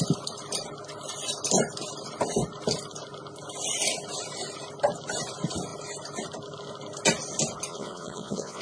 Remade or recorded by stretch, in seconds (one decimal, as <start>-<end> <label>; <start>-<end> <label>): 0.0-7.7 recorded; 7.7-8.6 remade